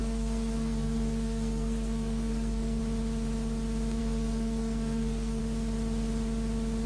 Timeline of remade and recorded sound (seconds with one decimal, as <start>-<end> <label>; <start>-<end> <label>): 0.0-2.8 remade; 2.8-4.0 recorded; 4.0-5.4 remade; 5.4-6.9 recorded